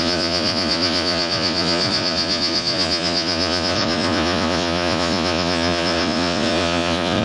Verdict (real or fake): fake